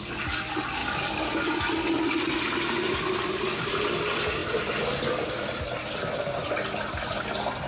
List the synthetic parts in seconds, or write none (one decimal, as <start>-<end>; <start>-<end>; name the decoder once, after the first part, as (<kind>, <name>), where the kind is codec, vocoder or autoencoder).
0.8-1.6 (codec, DAC)